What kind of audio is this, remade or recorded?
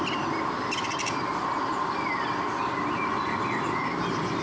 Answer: recorded